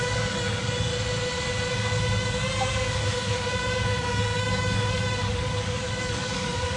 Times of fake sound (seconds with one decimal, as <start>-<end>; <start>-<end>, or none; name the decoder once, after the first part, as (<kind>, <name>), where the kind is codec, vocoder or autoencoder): 0.0-0.9 (codec, DAC); 1.7-6.8